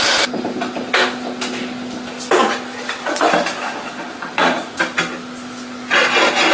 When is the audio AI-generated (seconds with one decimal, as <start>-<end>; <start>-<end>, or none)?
4.3-4.8